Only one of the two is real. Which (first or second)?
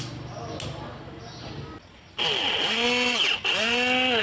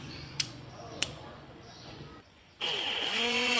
first